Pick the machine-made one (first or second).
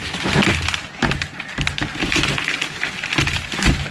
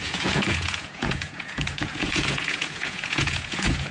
second